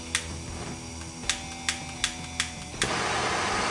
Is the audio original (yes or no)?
yes